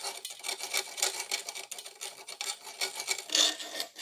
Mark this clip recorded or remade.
recorded